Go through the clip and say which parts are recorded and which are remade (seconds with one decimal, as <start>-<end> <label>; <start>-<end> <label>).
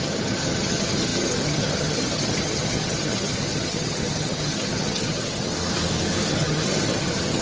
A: 0.0-5.5 remade; 5.5-6.3 recorded; 6.3-7.4 remade